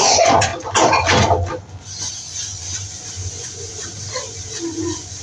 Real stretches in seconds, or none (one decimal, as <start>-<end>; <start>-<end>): 0.5-3.1; 3.7-4.8